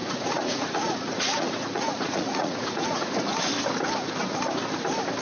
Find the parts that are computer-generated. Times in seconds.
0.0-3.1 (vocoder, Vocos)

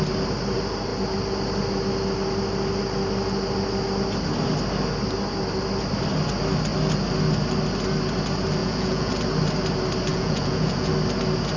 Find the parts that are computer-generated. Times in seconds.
8.6-9.2 (vocoder, Vocos); 10.1-10.9